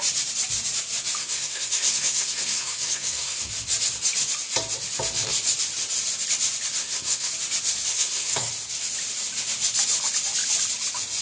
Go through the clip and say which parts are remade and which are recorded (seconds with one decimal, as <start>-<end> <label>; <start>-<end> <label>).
0.0-1.2 recorded; 1.2-3.5 remade; 3.5-6.8 recorded; 6.8-7.3 remade; 7.3-7.9 recorded; 7.9-8.5 remade; 8.5-11.2 recorded